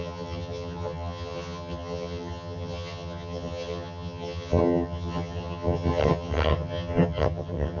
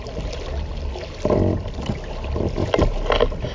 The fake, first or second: first